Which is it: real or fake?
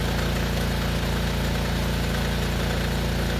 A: real